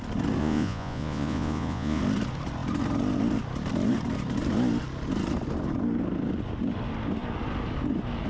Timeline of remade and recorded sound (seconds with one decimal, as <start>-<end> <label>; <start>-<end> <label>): 0.0-0.4 recorded; 0.4-2.0 remade; 2.0-8.3 recorded